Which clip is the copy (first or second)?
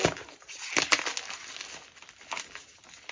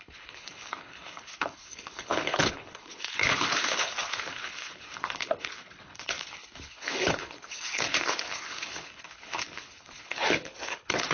second